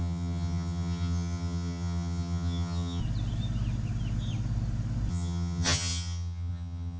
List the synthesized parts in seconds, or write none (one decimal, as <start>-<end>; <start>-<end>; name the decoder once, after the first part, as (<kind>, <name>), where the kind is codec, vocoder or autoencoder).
0.0-3.0 (vocoder, HiFi-GAN); 5.1-7.0